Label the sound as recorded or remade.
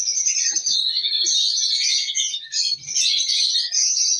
recorded